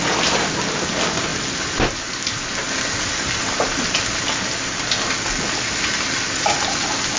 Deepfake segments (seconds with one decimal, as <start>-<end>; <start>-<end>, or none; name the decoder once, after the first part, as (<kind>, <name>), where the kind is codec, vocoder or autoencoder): none